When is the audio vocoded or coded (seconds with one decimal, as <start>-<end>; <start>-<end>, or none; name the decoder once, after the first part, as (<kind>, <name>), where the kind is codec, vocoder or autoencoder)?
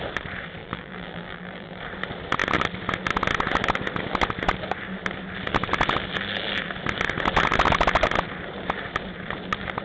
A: 0.6-1.8 (vocoder, BigVGAN v2)